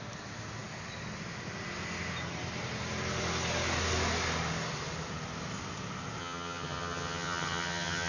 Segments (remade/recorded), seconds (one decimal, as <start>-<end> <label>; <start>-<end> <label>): 0.0-6.2 recorded; 6.2-8.1 remade